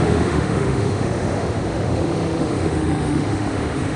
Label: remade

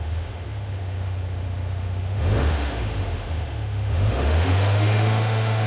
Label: remade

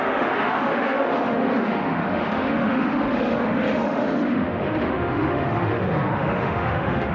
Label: remade